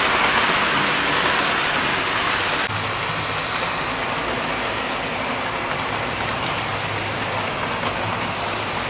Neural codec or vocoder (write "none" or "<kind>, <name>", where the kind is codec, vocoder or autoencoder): none